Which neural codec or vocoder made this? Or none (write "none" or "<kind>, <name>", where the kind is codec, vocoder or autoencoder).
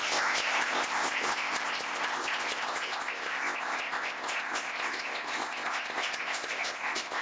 codec, ZipCodec